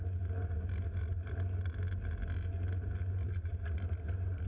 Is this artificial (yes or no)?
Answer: no